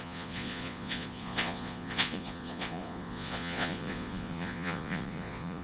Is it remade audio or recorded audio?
remade